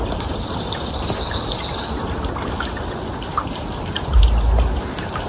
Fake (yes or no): no